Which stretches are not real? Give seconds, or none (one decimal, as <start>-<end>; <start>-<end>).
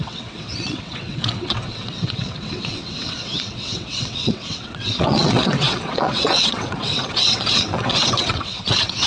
0.0-9.1